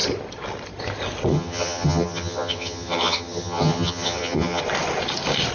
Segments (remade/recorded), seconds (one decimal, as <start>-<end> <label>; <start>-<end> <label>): 0.0-1.3 recorded; 1.3-4.6 remade; 4.6-5.5 recorded